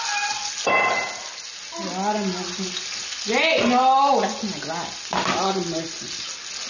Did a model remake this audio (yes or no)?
no